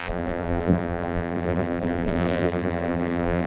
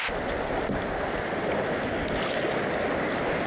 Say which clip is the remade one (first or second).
first